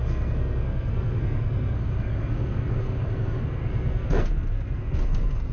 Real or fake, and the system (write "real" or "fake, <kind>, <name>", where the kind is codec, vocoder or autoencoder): fake, codec, SNAC